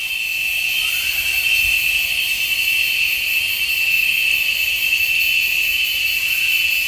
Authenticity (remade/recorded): recorded